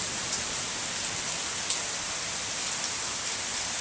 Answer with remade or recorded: recorded